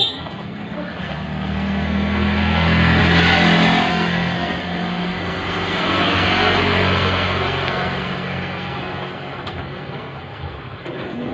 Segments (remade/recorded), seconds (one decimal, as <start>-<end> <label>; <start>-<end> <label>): 0.0-3.0 remade; 3.0-3.9 recorded; 3.9-11.3 remade